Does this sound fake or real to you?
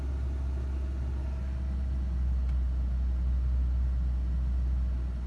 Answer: real